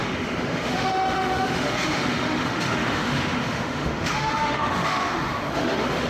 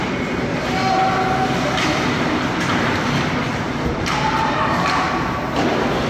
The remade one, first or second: first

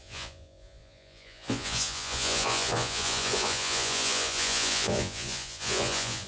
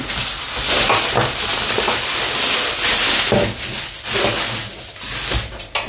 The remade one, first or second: first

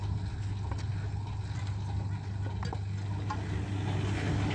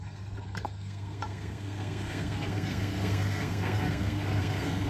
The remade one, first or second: second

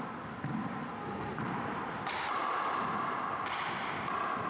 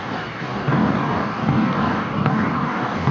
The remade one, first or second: second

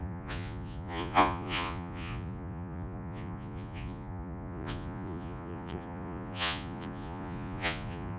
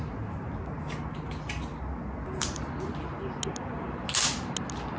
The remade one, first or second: first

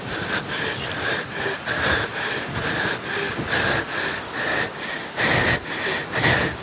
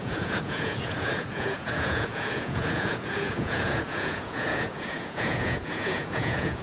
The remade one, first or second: second